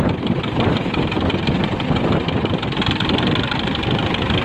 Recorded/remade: remade